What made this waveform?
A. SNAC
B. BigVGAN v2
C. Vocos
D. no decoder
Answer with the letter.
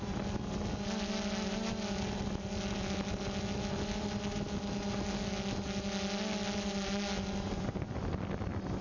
D